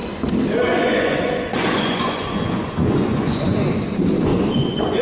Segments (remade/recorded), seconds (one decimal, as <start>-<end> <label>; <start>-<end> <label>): 0.0-0.7 recorded; 0.7-3.7 remade; 3.7-4.3 recorded; 4.3-5.0 remade